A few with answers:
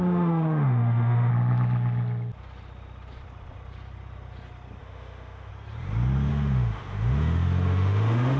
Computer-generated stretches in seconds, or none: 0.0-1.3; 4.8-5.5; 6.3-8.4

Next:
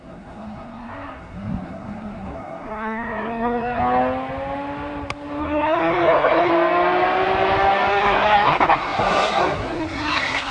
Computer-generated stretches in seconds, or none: 0.0-3.8; 5.4-6.5; 7.9-10.5

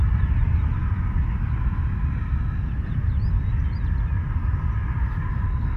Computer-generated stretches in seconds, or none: none

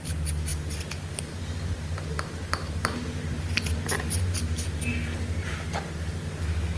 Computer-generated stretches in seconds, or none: none

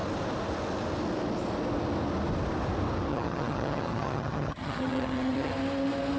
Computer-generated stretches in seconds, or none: 3.1-5.5

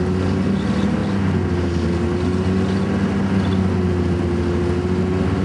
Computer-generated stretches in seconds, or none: none